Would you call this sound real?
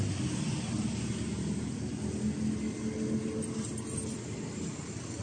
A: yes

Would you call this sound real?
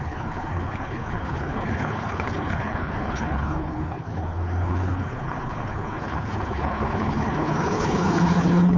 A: no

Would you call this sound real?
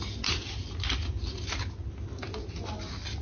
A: yes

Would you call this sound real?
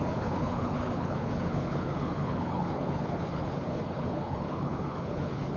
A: no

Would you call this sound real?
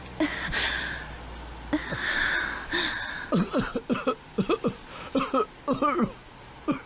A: yes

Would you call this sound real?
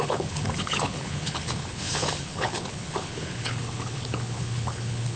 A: no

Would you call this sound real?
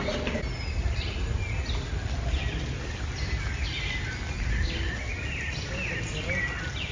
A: yes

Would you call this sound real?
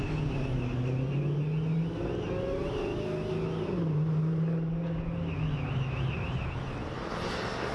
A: yes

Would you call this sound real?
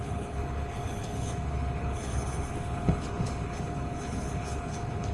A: no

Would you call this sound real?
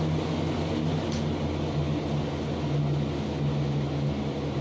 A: yes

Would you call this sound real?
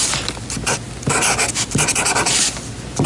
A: yes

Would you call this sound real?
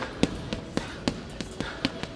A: yes